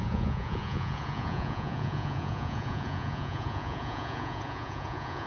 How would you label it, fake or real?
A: fake